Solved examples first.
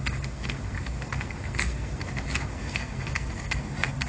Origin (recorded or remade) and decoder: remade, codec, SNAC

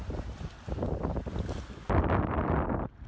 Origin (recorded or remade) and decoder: recorded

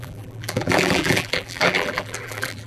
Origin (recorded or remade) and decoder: remade, vocoder, BigVGAN v2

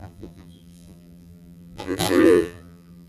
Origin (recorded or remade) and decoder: remade, vocoder, BigVGAN v2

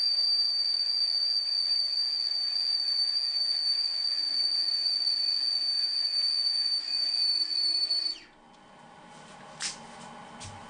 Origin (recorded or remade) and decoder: recorded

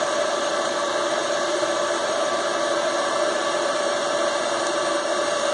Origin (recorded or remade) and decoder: remade, vocoder, BigVGAN v2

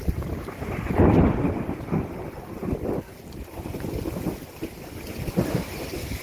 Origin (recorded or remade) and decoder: recorded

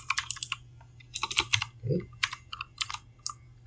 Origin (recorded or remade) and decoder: recorded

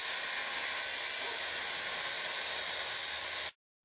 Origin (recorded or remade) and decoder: recorded